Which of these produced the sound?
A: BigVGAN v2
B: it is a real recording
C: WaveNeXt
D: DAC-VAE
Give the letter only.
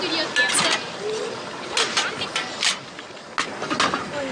B